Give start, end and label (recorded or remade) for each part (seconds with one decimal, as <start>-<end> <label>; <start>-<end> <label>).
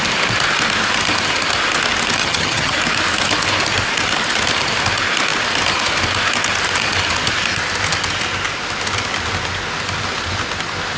0.0-2.2 recorded; 2.2-2.8 remade; 2.8-11.0 recorded